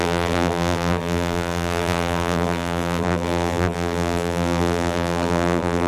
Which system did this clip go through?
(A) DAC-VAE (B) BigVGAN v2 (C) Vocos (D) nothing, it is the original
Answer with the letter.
B